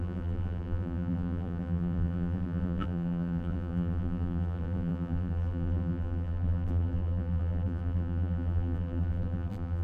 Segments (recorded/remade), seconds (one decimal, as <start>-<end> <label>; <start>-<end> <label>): 0.0-9.8 remade